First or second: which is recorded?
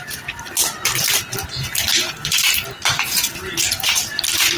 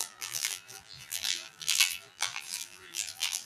first